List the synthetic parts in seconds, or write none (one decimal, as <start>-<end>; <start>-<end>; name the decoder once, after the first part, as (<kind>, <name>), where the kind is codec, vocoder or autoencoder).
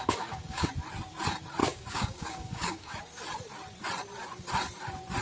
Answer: 0.0-0.7 (codec, DAC); 1.6-3.0